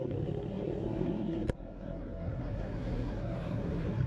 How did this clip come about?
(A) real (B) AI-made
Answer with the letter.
B